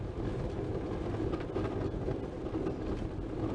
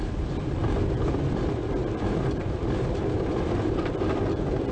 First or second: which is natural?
first